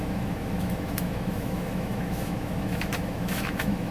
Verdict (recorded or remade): remade